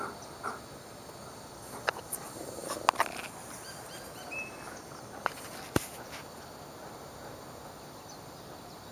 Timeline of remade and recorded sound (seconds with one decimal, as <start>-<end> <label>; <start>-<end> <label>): 0.0-8.9 recorded